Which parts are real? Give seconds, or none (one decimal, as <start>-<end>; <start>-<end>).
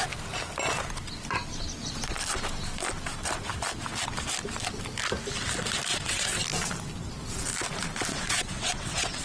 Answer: 0.0-5.9; 6.4-8.1